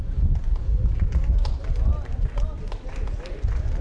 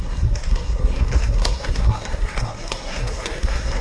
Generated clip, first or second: second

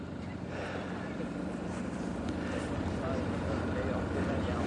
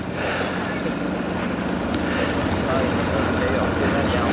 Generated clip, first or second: first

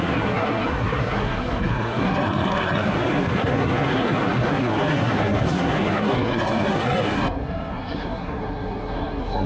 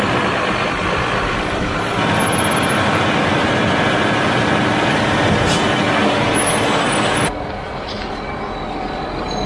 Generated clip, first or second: first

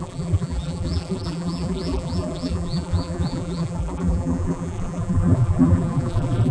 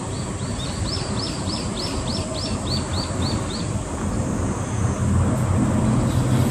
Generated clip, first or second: first